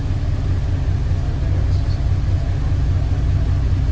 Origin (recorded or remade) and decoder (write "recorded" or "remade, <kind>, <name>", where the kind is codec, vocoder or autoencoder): recorded